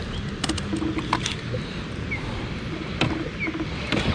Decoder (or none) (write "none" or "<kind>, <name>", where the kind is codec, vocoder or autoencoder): none